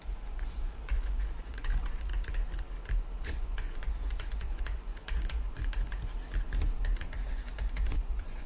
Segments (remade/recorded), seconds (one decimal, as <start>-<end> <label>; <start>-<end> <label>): 0.0-2.1 remade; 2.1-3.2 recorded; 3.2-6.1 remade; 6.1-7.3 recorded; 7.3-8.5 remade